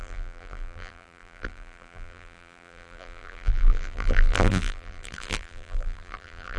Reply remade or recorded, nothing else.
remade